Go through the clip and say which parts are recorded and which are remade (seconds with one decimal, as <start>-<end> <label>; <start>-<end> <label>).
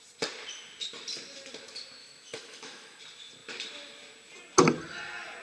0.0-2.0 recorded; 2.0-3.0 remade; 3.0-5.4 recorded